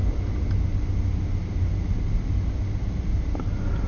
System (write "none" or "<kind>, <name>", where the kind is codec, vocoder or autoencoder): none